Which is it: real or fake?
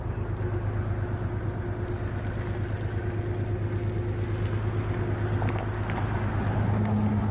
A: real